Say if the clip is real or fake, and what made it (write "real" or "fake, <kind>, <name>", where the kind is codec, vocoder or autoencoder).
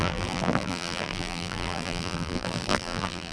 fake, vocoder, BigVGAN v2